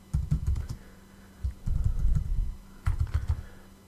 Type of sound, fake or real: real